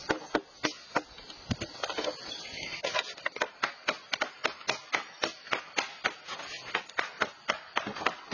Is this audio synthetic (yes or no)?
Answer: no